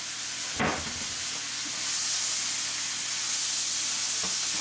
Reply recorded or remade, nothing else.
recorded